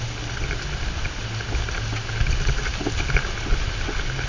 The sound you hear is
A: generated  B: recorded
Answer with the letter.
B